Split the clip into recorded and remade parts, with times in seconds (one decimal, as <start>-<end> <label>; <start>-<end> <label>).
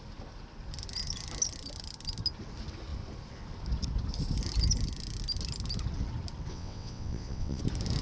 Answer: 0.0-6.5 recorded; 6.5-7.6 remade; 7.6-8.0 recorded